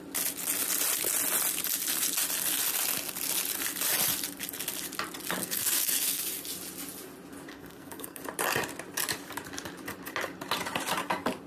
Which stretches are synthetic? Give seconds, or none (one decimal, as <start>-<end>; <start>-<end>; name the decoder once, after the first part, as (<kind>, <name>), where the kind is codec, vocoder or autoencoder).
5.4-6.2 (codec, SNAC); 7.5-8.2